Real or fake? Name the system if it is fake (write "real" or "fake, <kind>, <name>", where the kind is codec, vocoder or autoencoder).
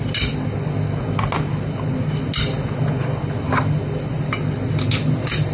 real